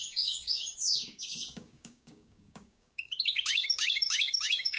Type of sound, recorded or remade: remade